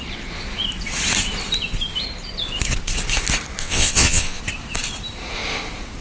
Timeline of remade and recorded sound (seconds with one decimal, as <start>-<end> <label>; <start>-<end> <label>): 0.0-3.6 recorded; 3.6-4.4 remade; 4.4-6.0 recorded